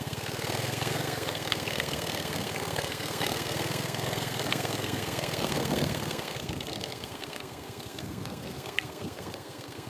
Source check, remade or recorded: remade